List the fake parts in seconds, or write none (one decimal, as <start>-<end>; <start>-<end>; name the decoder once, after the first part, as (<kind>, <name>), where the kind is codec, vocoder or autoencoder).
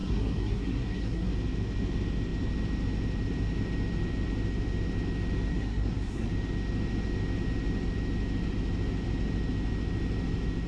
0.0-1.3 (codec, SNAC); 5.5-6.3